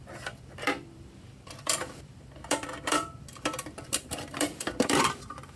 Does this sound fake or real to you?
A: fake